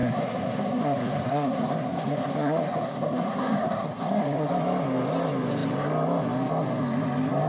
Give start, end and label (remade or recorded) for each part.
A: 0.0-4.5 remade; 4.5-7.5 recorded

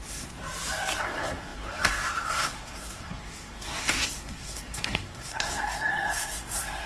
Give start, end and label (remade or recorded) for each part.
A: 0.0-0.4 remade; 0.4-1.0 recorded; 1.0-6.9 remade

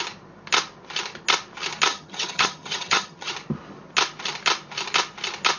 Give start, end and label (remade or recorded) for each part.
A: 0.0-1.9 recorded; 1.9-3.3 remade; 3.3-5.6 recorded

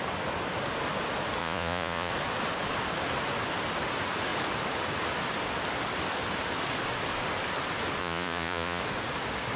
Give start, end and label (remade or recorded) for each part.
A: 0.0-1.4 recorded; 1.4-2.1 remade; 2.1-8.0 recorded; 8.0-8.8 remade; 8.8-9.6 recorded

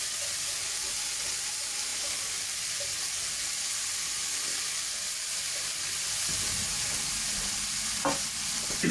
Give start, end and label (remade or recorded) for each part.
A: 0.0-8.9 recorded

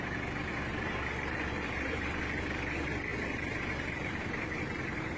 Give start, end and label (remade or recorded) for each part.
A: 0.0-0.5 recorded; 0.5-2.2 remade; 2.2-3.1 recorded; 3.1-5.2 remade

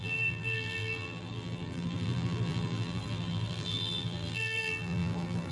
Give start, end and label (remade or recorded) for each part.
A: 0.0-5.5 remade

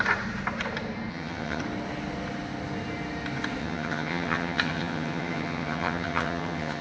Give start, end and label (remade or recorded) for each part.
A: 0.0-1.1 recorded; 1.1-1.6 remade; 1.6-3.6 recorded; 3.6-6.8 remade